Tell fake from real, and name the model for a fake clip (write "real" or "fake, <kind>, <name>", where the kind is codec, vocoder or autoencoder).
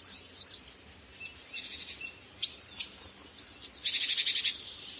real